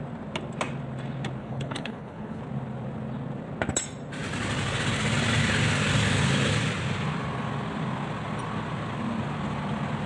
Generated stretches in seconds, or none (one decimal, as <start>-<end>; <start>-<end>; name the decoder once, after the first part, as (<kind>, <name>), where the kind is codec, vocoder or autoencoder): 1.4-2.4 (codec, HILCodec)